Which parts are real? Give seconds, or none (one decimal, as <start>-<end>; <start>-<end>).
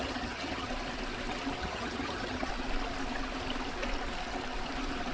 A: 0.7-1.6; 2.5-5.1